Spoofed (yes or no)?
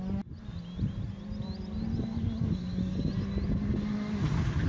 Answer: no